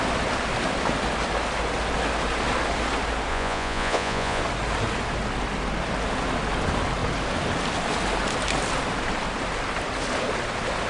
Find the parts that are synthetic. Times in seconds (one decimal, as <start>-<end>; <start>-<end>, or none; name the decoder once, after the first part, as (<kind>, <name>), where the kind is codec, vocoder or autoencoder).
3.3-4.4 (vocoder, Vocos)